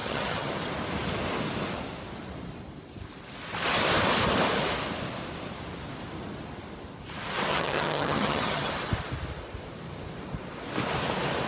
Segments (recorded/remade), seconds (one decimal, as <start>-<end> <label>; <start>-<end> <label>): 0.0-0.5 remade; 0.5-7.5 recorded; 7.5-8.7 remade; 8.7-11.5 recorded